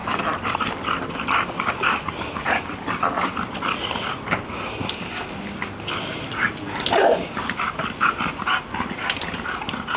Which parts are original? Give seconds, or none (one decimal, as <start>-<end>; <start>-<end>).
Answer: 2.1-10.0